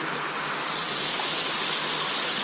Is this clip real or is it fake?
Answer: real